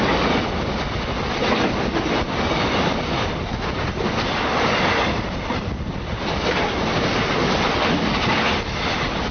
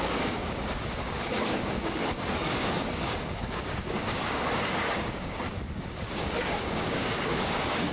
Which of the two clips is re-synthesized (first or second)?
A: second